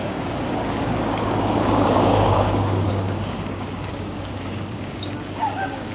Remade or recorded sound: remade